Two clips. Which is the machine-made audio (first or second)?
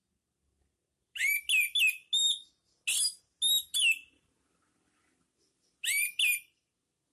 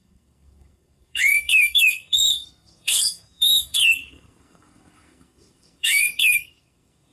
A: second